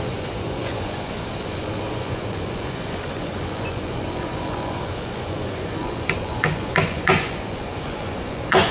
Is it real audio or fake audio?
fake